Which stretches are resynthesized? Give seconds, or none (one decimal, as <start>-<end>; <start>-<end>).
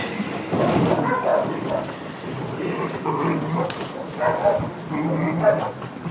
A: none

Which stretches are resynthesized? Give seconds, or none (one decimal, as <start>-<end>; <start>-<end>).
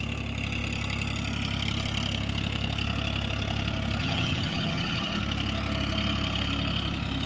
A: 4.0-5.2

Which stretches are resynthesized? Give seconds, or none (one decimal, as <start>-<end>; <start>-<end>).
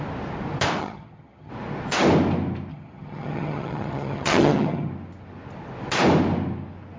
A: 0.8-1.5; 2.7-4.9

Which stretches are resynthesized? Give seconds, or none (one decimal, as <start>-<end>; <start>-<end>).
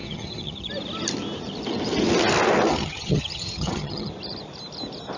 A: 0.0-0.7; 2.7-4.1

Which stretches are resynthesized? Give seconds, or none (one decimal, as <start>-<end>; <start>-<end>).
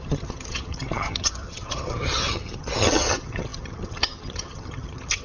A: 0.0-5.2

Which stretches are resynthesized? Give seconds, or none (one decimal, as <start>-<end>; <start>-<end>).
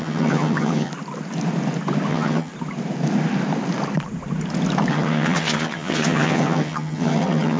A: 0.0-0.9; 2.1-2.5; 4.9-7.6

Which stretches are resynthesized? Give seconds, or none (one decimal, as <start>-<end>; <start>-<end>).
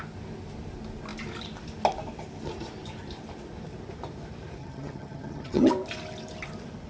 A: 4.6-5.7